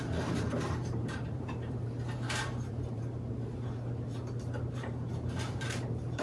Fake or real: fake